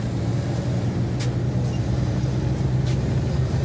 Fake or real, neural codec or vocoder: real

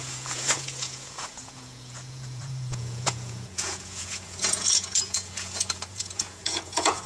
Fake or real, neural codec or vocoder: fake, vocoder, Vocos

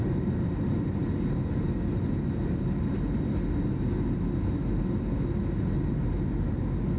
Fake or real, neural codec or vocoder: real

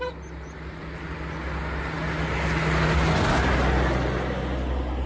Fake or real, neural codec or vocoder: real